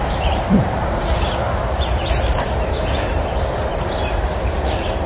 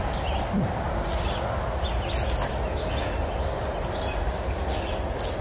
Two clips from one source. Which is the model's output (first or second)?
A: first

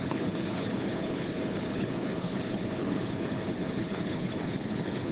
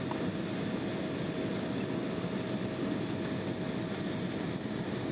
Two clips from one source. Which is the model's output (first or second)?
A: first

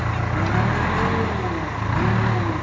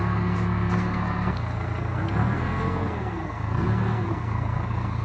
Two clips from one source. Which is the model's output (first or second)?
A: second